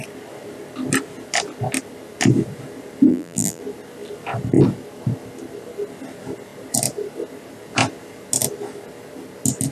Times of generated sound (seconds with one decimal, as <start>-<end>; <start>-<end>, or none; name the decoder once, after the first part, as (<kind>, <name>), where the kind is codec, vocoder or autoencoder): 3.1-3.6 (vocoder, BigVGAN v2)